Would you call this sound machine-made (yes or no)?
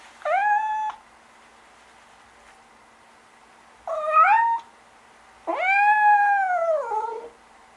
no